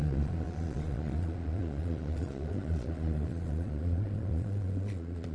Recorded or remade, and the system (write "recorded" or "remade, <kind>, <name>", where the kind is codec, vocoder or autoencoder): remade, vocoder, Vocos